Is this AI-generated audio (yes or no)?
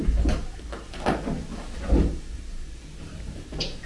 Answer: no